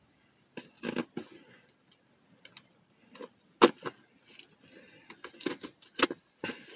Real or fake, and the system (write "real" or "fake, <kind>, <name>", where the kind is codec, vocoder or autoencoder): real